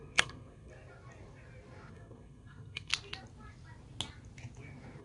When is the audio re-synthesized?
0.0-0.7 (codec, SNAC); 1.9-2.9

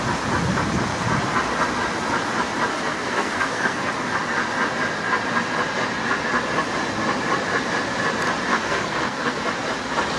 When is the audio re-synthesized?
2.7-3.9 (codec, SNAC); 8.5-9.4

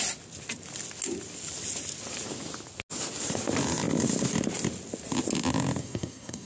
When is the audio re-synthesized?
5.8-6.5 (codec, SNAC)

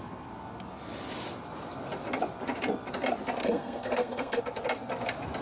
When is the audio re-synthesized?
3.4-4.4 (codec, SNAC)

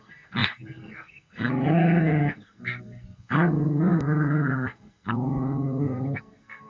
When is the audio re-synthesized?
0.0-6.7 (codec, SNAC)

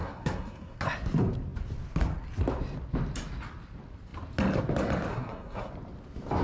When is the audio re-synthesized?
0.0-0.8 (codec, SNAC); 5.1-5.7

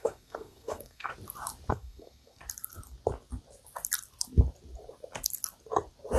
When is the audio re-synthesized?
0.0-1.1 (codec, SNAC); 1.7-2.4

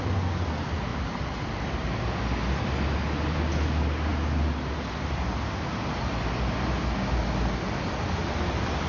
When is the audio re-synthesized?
none